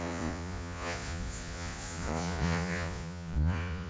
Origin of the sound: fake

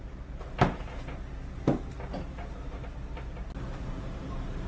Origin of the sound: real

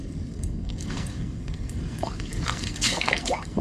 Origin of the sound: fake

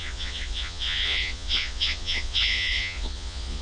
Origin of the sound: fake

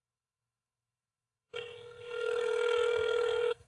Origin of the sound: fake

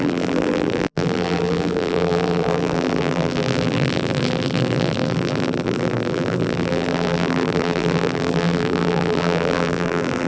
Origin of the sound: fake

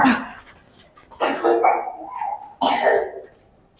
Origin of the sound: real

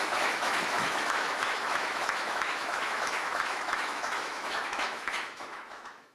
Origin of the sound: fake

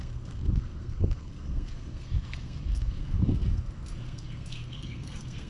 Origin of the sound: fake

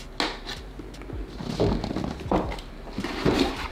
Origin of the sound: real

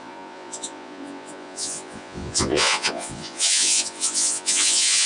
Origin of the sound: fake